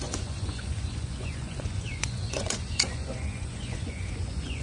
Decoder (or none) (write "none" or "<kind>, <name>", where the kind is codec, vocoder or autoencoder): vocoder, Vocos